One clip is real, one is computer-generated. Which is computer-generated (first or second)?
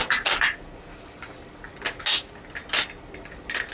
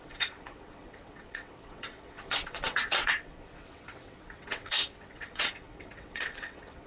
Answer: second